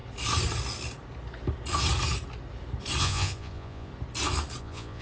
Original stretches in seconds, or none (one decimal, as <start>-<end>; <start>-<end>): 0.0-3.0; 3.9-4.6